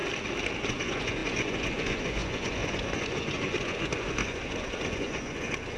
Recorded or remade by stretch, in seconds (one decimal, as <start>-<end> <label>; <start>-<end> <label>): 0.0-0.6 recorded; 0.6-5.8 remade